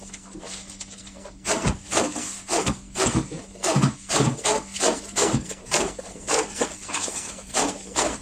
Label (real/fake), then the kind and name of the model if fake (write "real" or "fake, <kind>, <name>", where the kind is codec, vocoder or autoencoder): fake, codec, SNAC